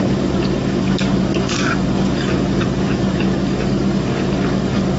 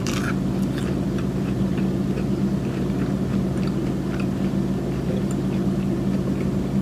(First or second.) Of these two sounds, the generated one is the first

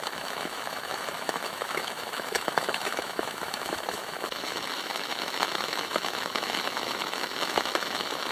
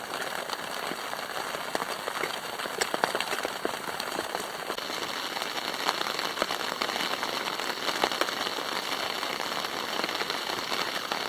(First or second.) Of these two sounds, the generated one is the first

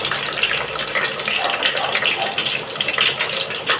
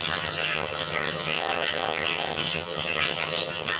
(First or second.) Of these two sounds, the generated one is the second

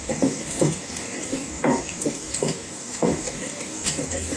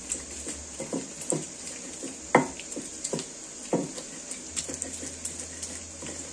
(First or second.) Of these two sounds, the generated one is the first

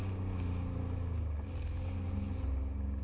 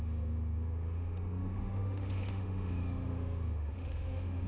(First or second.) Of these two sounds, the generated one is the second